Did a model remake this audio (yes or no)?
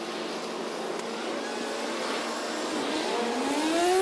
no